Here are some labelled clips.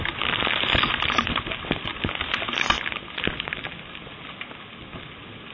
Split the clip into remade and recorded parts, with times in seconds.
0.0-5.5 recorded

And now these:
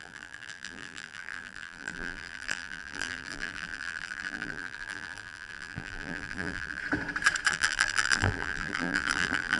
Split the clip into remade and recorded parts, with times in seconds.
0.0-6.8 remade; 6.8-7.5 recorded; 7.5-9.6 remade

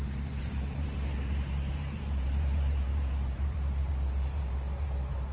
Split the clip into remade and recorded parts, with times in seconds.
0.0-5.3 remade

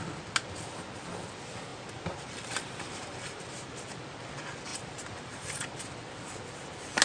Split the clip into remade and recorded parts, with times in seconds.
0.0-1.7 recorded; 1.7-3.8 remade; 3.8-4.7 recorded; 4.7-5.8 remade; 5.8-7.0 recorded